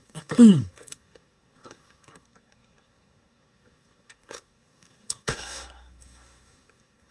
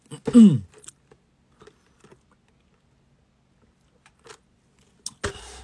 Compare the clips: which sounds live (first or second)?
second